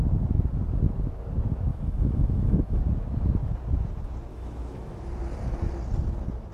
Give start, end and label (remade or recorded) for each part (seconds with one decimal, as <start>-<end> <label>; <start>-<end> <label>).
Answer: 0.0-1.7 recorded; 1.7-2.8 remade; 2.8-4.3 recorded; 4.3-5.0 remade; 5.0-6.5 recorded